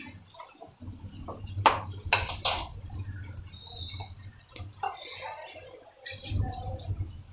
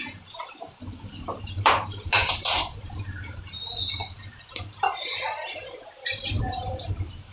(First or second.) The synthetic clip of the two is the second